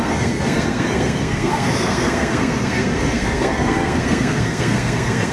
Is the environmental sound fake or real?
fake